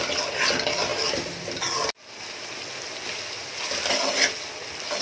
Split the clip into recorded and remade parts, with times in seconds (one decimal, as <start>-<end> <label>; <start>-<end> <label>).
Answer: 0.0-5.0 recorded